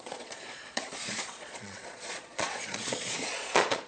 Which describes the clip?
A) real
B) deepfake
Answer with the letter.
B